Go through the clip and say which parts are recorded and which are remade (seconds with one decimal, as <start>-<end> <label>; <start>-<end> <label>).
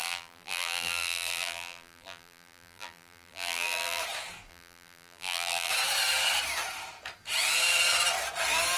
0.0-4.0 remade; 4.0-4.5 recorded; 4.5-5.7 remade; 5.7-8.8 recorded